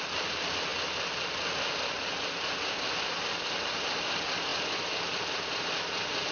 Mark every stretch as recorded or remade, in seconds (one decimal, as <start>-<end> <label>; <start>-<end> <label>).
0.0-6.3 recorded

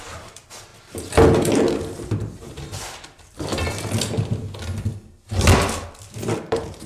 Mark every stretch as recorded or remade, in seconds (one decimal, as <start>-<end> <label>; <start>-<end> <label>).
0.0-0.7 remade; 0.7-2.1 recorded; 2.1-3.5 remade; 3.5-6.1 recorded; 6.1-6.9 remade